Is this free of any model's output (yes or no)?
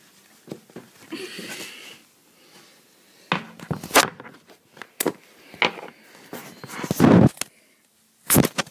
yes